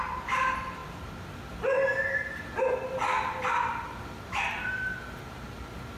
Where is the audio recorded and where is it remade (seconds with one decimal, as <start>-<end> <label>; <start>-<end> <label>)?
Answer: 0.0-6.0 recorded

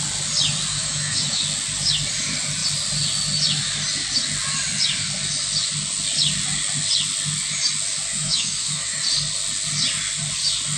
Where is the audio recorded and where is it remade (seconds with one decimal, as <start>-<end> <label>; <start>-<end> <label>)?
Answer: 0.0-0.7 recorded; 0.7-1.4 remade; 1.4-8.1 recorded; 8.1-9.0 remade; 9.0-10.8 recorded

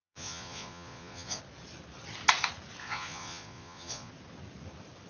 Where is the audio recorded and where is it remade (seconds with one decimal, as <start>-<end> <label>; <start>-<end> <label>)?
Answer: 0.0-1.4 remade; 1.4-2.8 recorded; 2.8-4.1 remade; 4.1-5.1 recorded

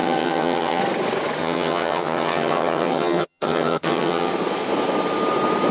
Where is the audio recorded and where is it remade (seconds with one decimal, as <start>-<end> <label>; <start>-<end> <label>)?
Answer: 0.0-0.8 remade; 0.8-1.4 recorded; 1.4-4.3 remade; 4.3-5.7 recorded